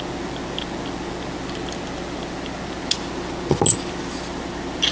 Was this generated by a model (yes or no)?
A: no